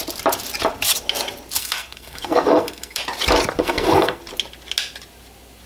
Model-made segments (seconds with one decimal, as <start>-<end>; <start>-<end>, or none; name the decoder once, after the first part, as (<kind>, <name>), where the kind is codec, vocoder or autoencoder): 1.6-3.0 (codec, SNAC); 3.6-4.2